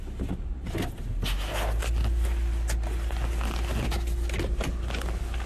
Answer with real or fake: real